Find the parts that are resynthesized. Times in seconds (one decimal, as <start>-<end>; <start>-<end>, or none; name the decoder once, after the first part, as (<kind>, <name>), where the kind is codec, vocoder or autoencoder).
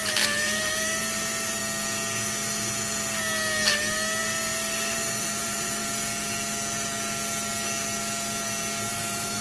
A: 0.0-1.6 (vocoder, BigVGAN v2); 4.2-5.8; 8.9-9.4